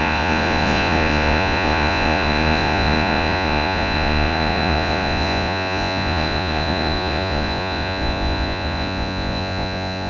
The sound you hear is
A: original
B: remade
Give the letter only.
B